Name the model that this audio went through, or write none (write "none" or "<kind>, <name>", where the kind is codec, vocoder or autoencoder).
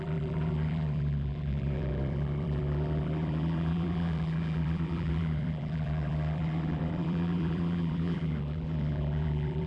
vocoder, BigVGAN v2